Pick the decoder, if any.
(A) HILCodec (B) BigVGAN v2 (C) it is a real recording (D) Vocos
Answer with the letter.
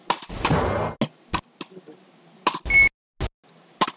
C